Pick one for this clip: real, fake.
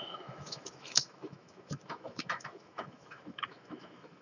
fake